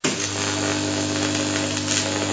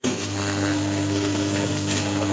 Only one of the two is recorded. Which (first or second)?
first